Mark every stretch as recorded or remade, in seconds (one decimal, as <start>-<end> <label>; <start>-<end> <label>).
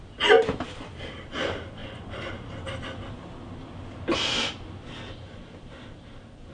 0.0-1.8 recorded; 1.8-2.3 remade; 2.3-6.5 recorded